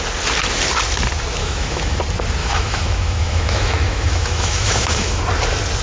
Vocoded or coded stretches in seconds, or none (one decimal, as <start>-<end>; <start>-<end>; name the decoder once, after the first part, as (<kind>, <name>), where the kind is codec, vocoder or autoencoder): 1.4-2.0 (autoencoder, DAC-VAE); 2.4-5.2